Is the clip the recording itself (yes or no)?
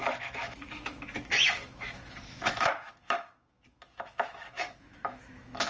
no